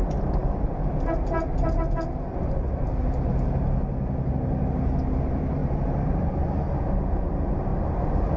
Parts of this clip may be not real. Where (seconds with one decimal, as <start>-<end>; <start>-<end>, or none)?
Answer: 5.6-6.3